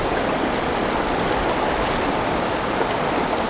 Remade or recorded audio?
recorded